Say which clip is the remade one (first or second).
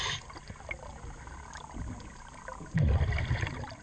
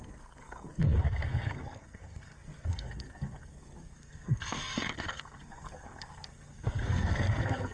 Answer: second